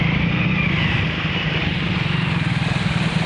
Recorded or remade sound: recorded